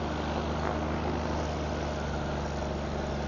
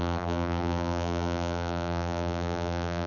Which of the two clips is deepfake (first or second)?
second